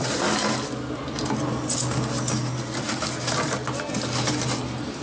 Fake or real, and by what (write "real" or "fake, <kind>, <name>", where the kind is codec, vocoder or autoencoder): real